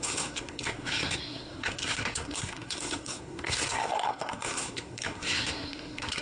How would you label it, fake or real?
fake